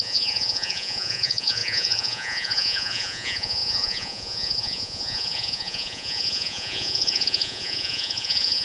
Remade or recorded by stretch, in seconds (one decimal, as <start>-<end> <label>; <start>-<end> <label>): 0.0-8.6 remade